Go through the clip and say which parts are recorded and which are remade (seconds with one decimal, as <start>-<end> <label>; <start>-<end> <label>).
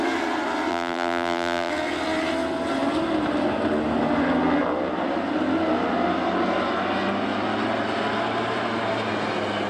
0.0-0.7 recorded; 0.7-1.7 remade; 1.7-9.7 recorded